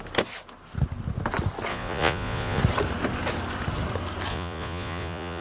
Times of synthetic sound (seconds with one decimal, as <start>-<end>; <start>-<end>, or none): 1.7-2.6; 4.3-5.4